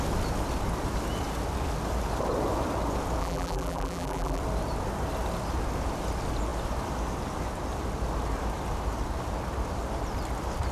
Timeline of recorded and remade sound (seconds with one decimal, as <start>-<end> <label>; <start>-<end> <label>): 0.0-3.2 recorded; 3.2-4.4 remade; 4.4-10.7 recorded